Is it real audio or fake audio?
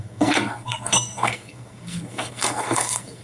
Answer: fake